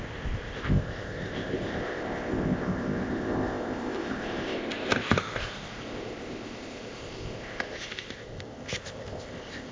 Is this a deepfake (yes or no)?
yes